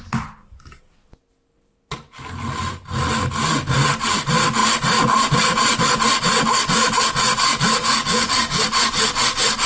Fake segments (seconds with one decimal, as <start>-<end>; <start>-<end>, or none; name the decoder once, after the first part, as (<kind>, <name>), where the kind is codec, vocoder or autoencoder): 7.8-8.6 (codec, DAC)

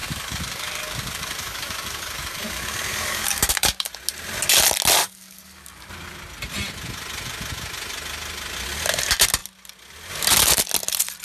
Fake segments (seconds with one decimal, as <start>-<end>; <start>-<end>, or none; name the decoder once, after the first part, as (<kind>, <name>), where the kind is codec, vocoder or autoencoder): 0.0-3.9 (codec, DAC); 5.0-5.9